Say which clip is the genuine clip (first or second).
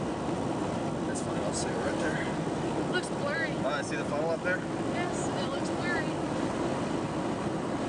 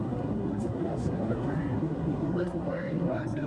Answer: first